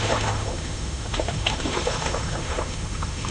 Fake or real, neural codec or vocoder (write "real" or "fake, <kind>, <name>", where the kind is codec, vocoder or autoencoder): fake, autoencoder, DAC-VAE